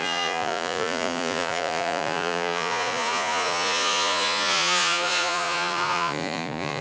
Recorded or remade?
remade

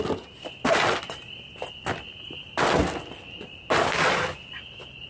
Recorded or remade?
recorded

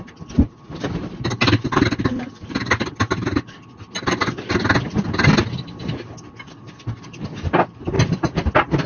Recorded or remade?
recorded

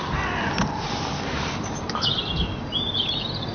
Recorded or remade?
recorded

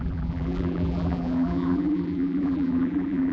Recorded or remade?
remade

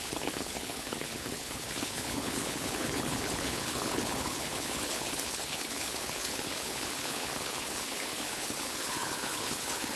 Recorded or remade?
remade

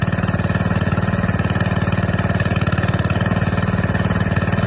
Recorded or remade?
recorded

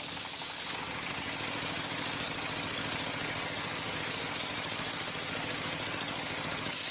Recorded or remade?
remade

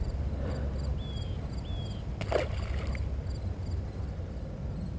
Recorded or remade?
recorded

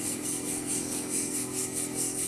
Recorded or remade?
remade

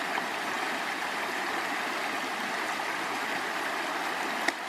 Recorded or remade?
recorded